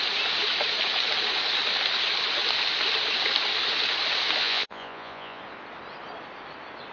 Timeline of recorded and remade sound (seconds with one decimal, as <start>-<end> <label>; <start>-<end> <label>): 0.0-4.4 recorded; 4.4-5.4 remade; 5.4-6.9 recorded